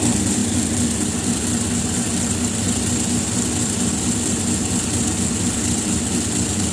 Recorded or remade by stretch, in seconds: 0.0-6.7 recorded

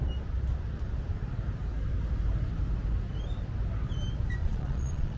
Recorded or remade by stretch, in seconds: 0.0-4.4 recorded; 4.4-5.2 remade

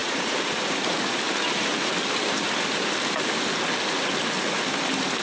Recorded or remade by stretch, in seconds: 0.0-1.2 remade; 1.2-5.2 recorded

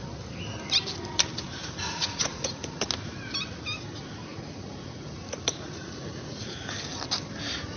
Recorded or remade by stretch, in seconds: 0.0-1.6 recorded; 1.6-2.6 remade; 2.6-4.2 recorded; 4.2-6.7 remade; 6.7-7.8 recorded